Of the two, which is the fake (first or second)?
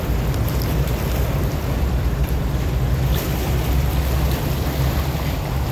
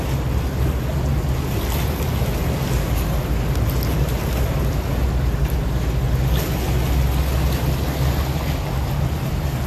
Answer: first